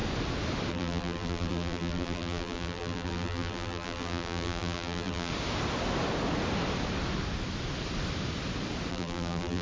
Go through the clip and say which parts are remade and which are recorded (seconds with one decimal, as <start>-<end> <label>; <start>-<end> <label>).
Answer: 0.0-0.7 recorded; 0.7-5.3 remade; 5.3-8.9 recorded; 8.9-9.6 remade